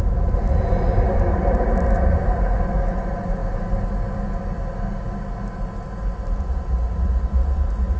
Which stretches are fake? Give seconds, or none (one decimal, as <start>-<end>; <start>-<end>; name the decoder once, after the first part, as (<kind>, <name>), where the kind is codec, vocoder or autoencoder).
0.0-3.4 (vocoder, BigVGAN v2); 6.0-8.0